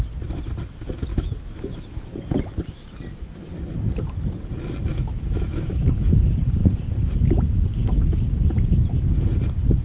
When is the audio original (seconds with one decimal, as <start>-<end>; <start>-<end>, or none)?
0.0-1.1; 2.1-4.9; 5.8-9.8